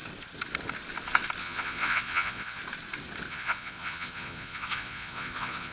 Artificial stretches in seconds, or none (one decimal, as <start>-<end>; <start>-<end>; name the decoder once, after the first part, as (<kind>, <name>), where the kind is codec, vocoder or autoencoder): 1.4-2.6 (vocoder, Vocos); 3.3-5.7